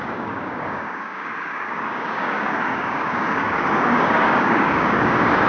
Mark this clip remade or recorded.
remade